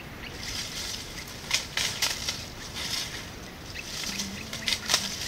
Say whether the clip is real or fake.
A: fake